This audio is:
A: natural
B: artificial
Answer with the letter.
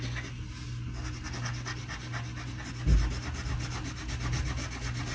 A